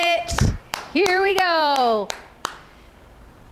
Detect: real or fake fake